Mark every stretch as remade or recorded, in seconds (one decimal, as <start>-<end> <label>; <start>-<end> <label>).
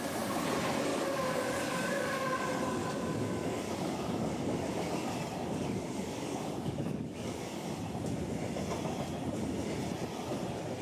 0.0-0.9 recorded; 0.9-2.4 remade; 2.4-2.8 recorded; 2.8-7.8 remade; 7.8-10.8 recorded